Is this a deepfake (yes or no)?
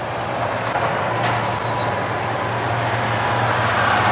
no